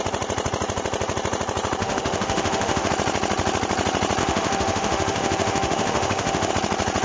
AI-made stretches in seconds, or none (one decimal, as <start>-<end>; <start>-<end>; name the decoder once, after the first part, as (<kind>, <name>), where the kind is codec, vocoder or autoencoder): 1.8-2.9 (autoencoder, DAC-VAE); 4.2-6.5